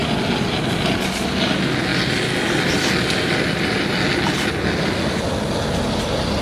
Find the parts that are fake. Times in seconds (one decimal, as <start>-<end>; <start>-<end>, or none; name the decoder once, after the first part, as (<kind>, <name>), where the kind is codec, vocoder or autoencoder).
none